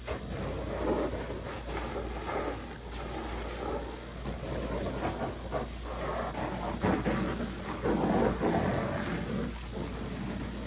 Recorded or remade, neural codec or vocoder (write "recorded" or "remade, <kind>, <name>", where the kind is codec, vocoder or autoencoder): recorded